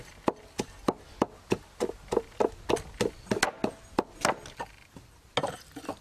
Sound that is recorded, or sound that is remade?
recorded